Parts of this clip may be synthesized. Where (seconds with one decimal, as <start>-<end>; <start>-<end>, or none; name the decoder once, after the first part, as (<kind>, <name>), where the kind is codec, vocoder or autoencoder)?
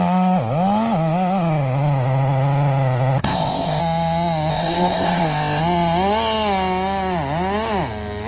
3.2-3.8 (codec, ZipCodec); 4.5-5.6